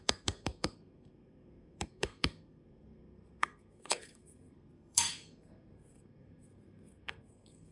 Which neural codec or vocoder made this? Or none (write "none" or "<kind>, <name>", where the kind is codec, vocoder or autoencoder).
codec, SNAC